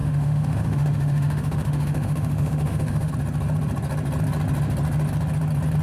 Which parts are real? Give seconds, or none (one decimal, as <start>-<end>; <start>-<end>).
3.1-5.8